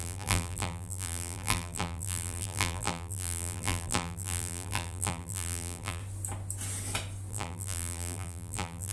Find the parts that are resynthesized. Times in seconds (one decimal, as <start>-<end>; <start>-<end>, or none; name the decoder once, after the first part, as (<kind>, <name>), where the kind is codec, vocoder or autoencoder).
0.0-6.0 (vocoder, BigVGAN v2); 7.3-8.9